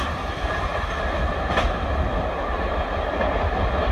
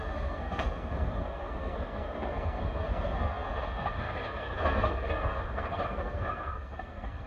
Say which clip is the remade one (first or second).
second